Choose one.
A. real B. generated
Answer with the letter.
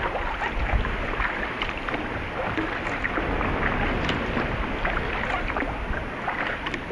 A